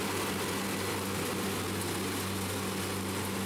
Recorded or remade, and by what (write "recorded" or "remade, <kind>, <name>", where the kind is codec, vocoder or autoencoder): recorded